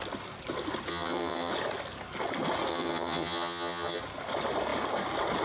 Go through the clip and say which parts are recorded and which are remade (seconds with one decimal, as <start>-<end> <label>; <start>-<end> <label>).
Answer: 0.0-0.9 recorded; 0.9-1.5 remade; 1.5-2.7 recorded; 2.7-4.0 remade; 4.0-5.4 recorded